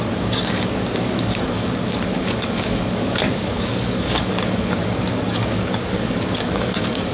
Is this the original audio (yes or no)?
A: no